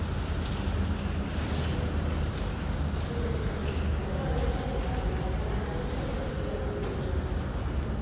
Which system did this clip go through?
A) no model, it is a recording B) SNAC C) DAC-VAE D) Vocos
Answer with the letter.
A